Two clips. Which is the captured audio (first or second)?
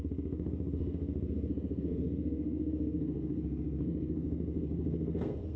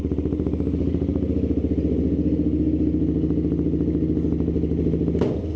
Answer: second